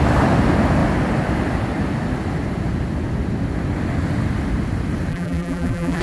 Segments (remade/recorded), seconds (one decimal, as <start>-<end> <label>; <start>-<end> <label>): 0.0-5.1 recorded; 5.1-6.0 remade